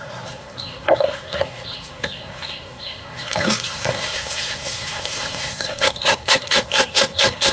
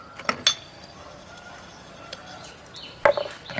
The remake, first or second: first